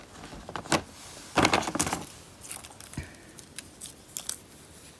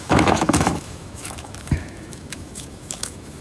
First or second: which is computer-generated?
second